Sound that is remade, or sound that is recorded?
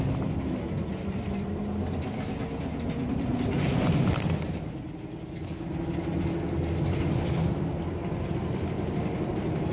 recorded